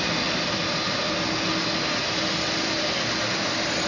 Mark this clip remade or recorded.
recorded